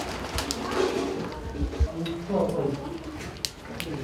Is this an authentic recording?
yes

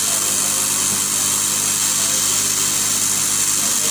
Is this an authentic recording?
yes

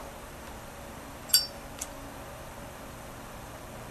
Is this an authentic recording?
no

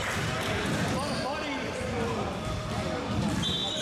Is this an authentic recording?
yes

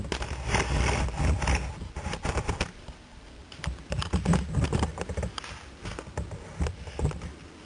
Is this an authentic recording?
yes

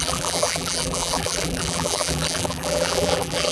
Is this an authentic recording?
no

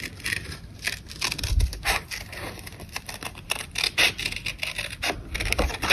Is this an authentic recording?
no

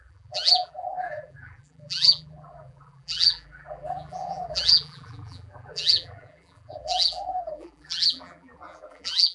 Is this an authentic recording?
no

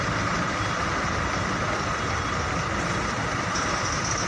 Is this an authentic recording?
yes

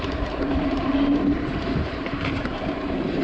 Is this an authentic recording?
no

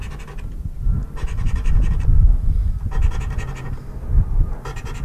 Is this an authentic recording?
yes